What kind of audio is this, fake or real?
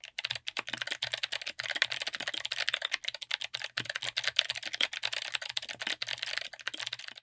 real